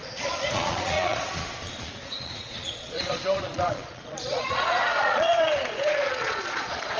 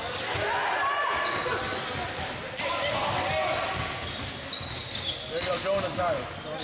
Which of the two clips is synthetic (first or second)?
first